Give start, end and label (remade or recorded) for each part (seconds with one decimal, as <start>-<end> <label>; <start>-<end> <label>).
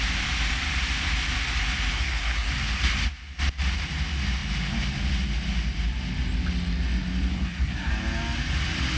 0.0-1.9 recorded; 1.9-2.5 remade; 2.5-7.3 recorded; 7.3-7.9 remade; 7.9-9.0 recorded